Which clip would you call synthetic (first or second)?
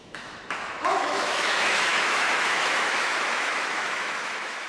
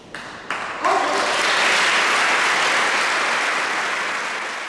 first